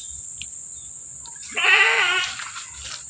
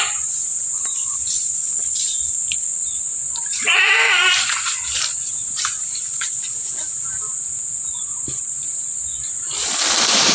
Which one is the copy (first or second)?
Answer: second